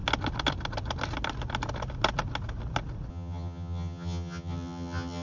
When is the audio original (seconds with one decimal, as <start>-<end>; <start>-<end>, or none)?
0.0-3.1